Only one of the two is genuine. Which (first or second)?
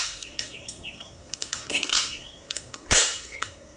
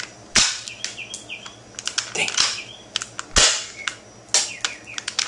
second